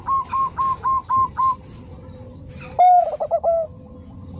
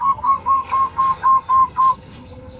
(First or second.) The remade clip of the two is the second